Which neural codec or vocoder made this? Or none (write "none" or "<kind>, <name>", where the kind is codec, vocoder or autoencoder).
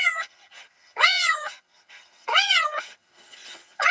vocoder, HiFi-GAN